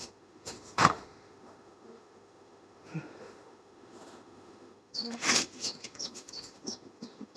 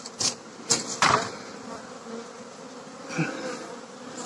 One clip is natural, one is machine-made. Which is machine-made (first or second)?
first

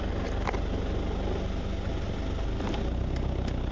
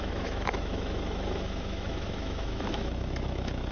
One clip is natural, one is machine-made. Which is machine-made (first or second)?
second